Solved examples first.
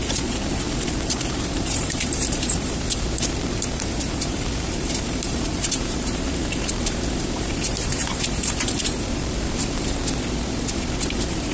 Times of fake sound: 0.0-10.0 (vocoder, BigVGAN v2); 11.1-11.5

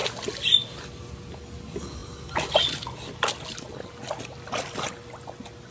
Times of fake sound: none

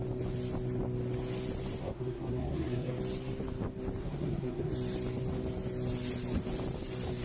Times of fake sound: 1.8-3.0 (codec, SNAC); 4.0-4.7

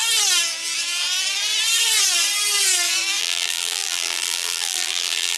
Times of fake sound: 3.2-5.4 (vocoder, BigVGAN v2)